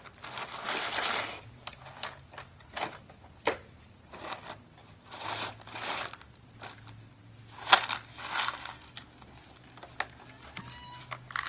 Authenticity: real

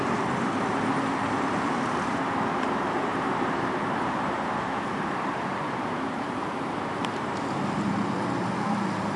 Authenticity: fake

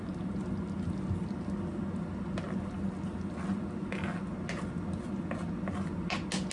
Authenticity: real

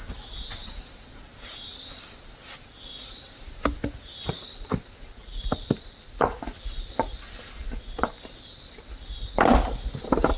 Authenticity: real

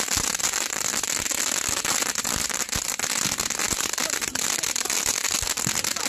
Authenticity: real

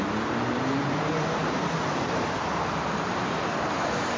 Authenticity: fake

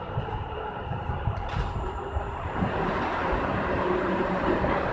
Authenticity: fake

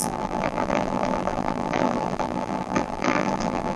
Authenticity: fake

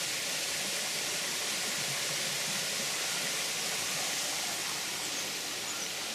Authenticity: real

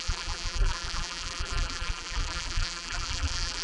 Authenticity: fake